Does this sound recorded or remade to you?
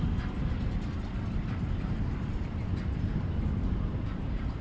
recorded